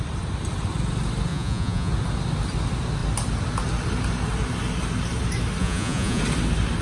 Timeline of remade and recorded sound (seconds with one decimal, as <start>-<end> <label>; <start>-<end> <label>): 0.0-1.3 recorded; 1.3-1.9 remade; 1.9-5.6 recorded; 5.6-6.2 remade; 6.2-6.8 recorded